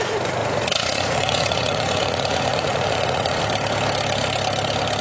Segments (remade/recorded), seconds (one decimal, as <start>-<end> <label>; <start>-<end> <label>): 0.0-0.4 recorded; 0.4-3.4 remade; 3.4-5.0 recorded